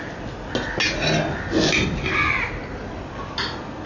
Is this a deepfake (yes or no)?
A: no